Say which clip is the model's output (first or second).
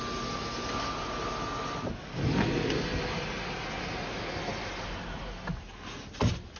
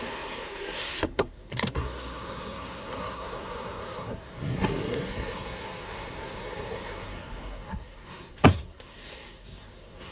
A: second